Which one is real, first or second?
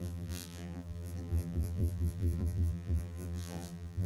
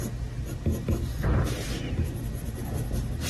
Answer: second